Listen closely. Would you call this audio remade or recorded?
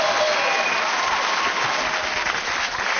recorded